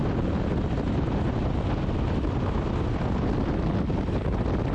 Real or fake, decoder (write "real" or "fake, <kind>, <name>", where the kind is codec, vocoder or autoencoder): real